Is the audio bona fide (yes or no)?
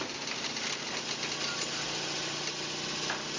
yes